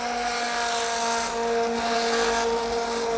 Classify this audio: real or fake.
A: real